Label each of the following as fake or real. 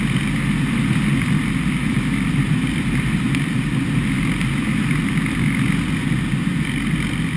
real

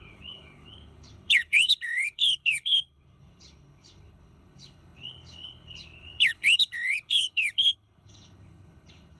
fake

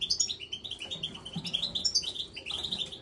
real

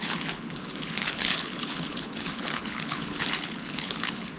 fake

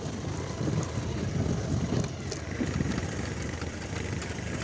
real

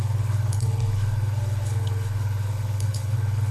fake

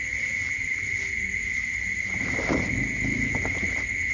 real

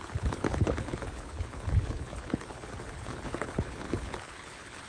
fake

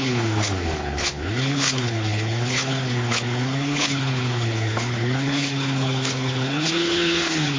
fake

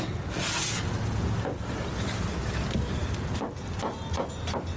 real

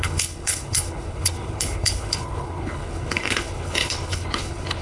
fake